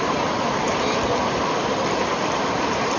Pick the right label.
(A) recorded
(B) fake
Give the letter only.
A